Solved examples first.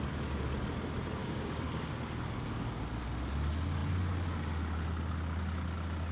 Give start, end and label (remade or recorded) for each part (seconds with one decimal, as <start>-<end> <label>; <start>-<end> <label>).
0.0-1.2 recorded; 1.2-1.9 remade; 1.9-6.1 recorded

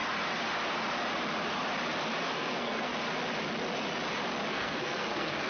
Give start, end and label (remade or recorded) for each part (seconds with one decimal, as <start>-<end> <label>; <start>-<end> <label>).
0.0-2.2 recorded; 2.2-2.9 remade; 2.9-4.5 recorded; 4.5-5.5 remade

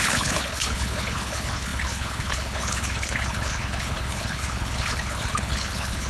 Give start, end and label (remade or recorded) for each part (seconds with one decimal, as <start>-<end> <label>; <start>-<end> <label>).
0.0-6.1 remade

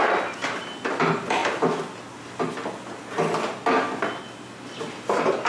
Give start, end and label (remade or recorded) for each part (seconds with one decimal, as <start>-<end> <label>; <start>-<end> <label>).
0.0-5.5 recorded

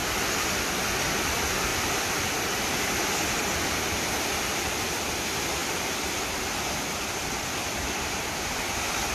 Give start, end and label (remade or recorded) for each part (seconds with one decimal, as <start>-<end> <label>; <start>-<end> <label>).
0.0-0.8 recorded; 0.8-9.1 remade

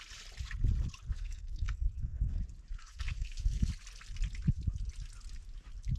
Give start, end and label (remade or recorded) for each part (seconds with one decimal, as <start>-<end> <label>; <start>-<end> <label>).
0.0-1.1 recorded; 1.1-2.4 remade; 2.4-2.8 recorded; 2.8-3.7 remade; 3.7-6.0 recorded